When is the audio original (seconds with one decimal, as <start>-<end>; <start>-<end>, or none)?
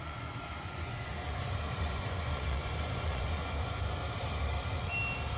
4.0-5.4